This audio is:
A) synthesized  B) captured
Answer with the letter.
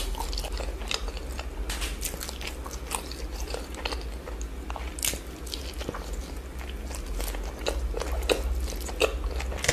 B